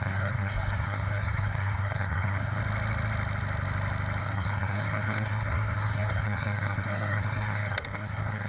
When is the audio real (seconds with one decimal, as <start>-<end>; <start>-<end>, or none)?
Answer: 2.6-4.2